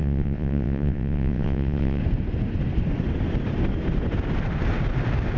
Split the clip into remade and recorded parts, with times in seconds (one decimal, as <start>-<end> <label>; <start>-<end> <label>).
0.0-2.0 remade; 2.0-5.4 recorded